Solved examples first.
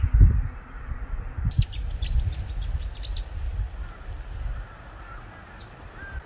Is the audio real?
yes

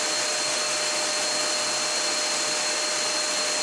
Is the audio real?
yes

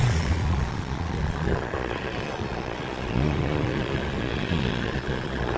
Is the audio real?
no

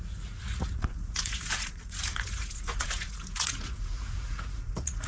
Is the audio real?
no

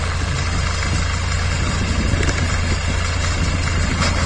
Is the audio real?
yes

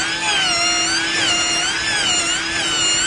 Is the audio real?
yes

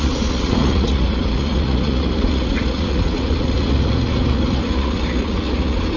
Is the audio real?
no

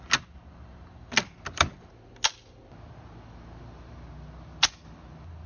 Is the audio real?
yes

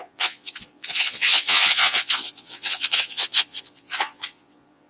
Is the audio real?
no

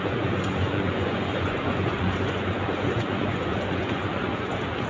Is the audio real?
no